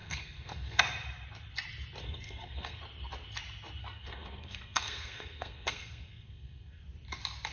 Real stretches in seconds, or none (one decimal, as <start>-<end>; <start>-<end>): 0.8-2.0; 2.8-3.8; 6.8-7.5